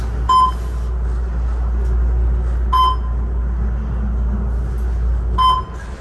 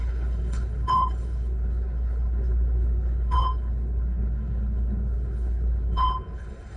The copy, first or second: second